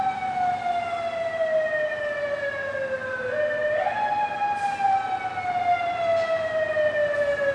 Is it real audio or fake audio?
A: real